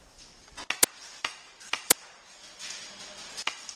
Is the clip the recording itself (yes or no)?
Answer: yes